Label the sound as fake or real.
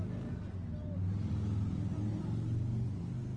real